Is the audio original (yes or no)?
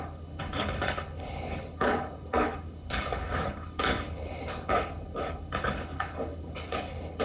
no